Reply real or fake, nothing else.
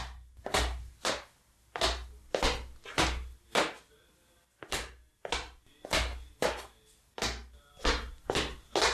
real